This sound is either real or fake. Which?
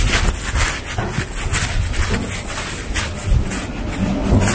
real